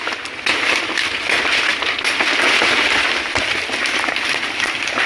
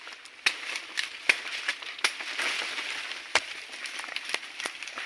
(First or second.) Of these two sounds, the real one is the first